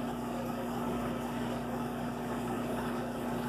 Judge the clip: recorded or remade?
remade